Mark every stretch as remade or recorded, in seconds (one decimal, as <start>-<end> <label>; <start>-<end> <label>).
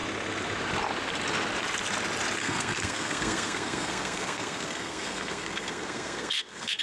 0.0-2.4 recorded; 2.4-6.8 remade